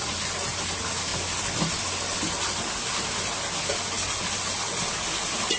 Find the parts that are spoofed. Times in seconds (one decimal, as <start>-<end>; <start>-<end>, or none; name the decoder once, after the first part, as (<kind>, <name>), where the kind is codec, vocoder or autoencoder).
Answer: none